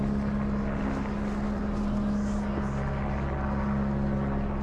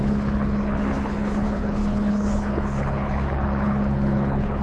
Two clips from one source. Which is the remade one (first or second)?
second